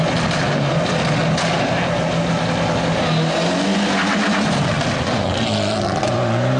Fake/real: real